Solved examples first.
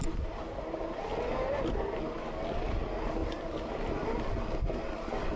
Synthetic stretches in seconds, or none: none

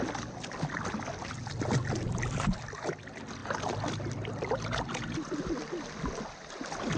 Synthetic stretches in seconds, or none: none

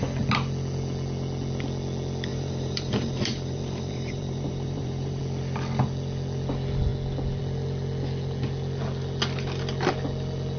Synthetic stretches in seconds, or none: 2.3-5.2 (vocoder, BigVGAN v2)

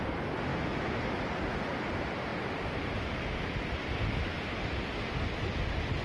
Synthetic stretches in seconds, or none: 0.5-1.2 (autoencoder, DAC-VAE)

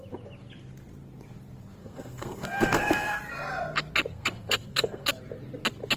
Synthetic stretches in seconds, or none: 1.8-3.2 (codec, SNAC); 4.1-5.1

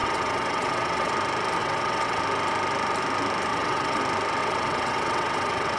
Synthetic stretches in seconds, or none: 0.0-1.1 (vocoder, WaveNeXt); 1.6-2.2; 3.5-4.0; 4.4-5.8